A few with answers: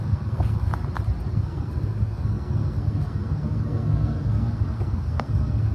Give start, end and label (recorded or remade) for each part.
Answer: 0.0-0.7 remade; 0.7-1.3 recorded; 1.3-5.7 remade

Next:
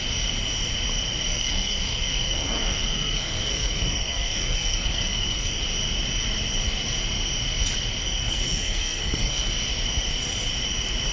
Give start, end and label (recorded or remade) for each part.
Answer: 0.0-1.3 recorded; 1.3-5.6 remade; 5.6-8.0 recorded; 8.0-9.5 remade; 9.5-11.1 recorded

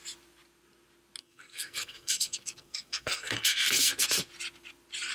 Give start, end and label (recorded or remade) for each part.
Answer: 0.0-1.2 recorded; 1.2-4.3 remade; 4.3-5.1 recorded